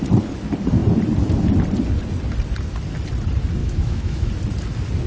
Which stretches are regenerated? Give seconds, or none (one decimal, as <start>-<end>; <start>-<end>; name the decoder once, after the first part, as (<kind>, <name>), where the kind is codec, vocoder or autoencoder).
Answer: 3.6-4.3 (autoencoder, DAC-VAE)